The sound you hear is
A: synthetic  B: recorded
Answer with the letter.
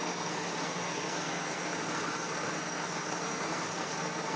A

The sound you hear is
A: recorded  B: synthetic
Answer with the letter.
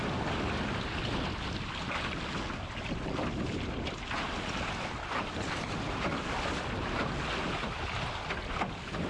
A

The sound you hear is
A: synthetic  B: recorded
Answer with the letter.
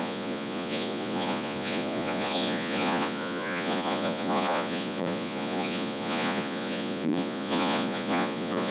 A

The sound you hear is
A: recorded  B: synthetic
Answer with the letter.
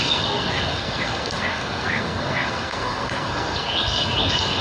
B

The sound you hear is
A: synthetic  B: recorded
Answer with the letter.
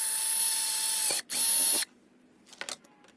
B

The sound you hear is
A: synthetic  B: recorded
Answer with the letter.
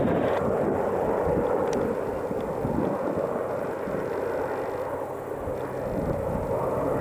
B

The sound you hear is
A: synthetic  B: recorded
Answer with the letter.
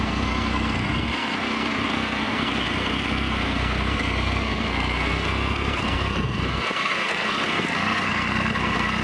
A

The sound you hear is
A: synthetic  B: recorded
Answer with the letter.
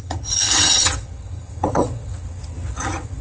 A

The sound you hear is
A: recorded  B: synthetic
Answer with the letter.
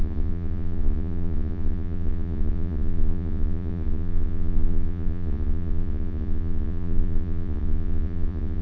B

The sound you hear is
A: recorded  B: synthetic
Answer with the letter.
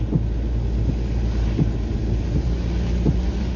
A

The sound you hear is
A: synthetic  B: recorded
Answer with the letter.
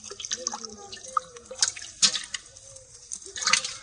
B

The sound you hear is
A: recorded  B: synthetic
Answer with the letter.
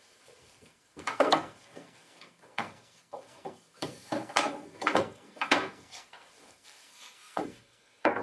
B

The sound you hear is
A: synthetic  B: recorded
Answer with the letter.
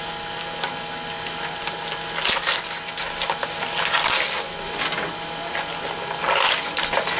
B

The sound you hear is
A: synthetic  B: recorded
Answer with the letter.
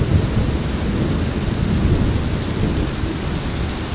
B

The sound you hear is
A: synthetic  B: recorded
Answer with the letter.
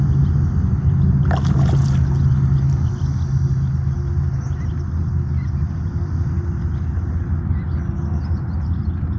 B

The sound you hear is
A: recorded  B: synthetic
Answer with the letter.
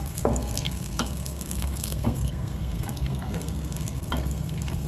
B